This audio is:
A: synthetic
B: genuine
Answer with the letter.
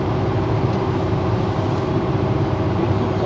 A